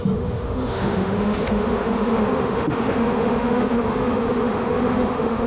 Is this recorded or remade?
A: remade